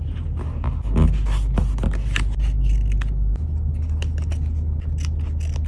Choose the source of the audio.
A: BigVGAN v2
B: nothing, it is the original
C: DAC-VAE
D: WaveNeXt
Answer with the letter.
B